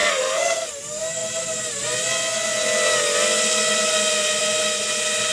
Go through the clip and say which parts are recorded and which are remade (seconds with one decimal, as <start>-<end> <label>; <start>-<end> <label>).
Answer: 0.0-0.7 remade; 0.7-5.3 recorded